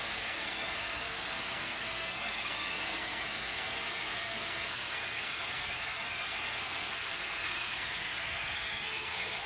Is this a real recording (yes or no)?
no